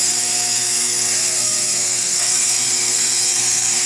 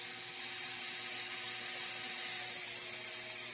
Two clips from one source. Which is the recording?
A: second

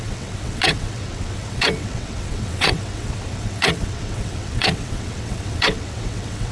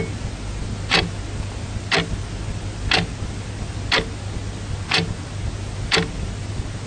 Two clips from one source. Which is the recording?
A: second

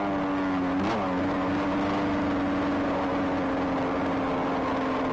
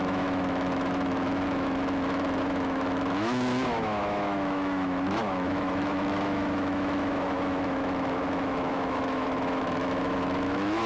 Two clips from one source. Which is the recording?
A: first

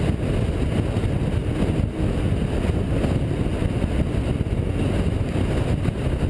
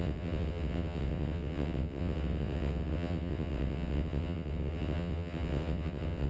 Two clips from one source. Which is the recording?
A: first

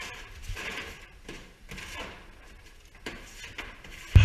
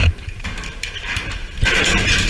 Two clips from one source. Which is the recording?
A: first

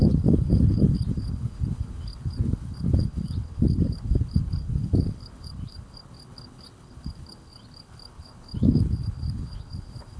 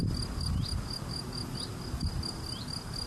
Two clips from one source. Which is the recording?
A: second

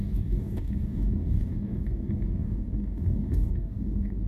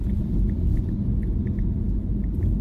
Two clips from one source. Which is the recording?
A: second